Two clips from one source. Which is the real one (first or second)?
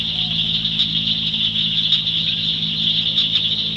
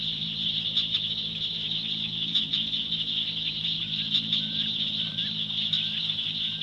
first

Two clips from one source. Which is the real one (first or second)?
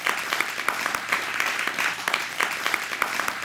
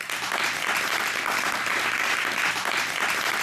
second